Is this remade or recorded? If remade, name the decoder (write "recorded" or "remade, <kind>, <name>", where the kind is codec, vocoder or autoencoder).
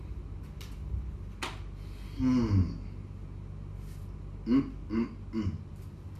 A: recorded